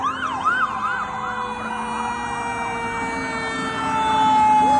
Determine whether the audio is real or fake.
real